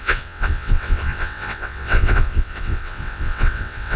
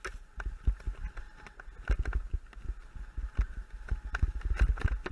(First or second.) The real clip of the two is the second